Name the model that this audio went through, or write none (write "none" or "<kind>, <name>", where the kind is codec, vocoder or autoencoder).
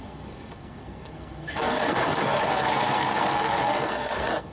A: codec, SNAC